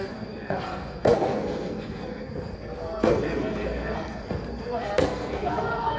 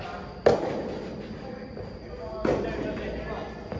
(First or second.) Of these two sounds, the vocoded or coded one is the first